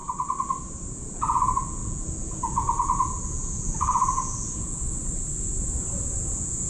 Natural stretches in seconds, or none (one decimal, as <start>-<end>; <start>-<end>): 0.0-0.9; 5.0-6.2